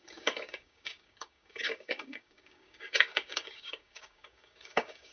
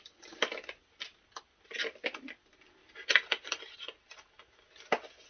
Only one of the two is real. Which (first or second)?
second